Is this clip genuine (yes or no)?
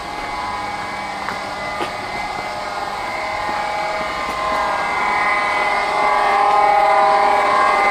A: yes